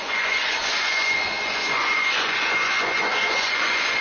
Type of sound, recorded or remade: remade